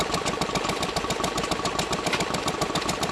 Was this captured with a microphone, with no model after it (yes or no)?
yes